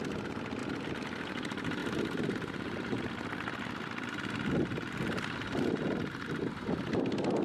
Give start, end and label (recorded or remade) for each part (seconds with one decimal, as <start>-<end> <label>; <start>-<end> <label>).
0.0-1.8 recorded; 1.8-3.1 remade; 3.1-7.4 recorded